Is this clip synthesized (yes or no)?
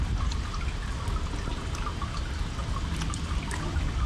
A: no